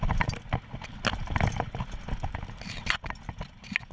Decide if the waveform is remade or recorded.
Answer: recorded